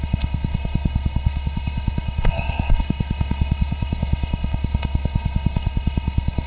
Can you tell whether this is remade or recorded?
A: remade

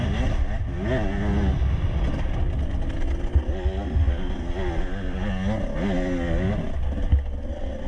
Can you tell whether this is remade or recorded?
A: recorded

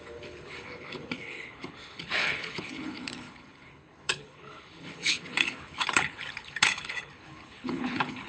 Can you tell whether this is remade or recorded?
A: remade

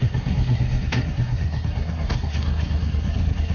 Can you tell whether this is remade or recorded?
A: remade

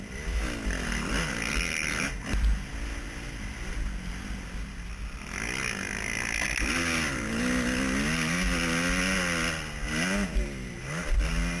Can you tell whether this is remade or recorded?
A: recorded